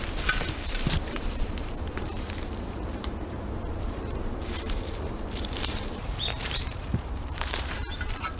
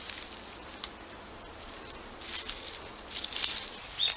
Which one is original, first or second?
second